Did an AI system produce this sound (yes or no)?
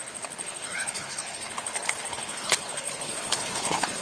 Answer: yes